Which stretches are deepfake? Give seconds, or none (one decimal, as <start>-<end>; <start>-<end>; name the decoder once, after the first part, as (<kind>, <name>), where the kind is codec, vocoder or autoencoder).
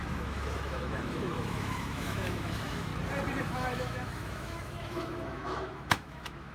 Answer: 0.0-2.9 (autoencoder, DAC-VAE); 3.4-6.5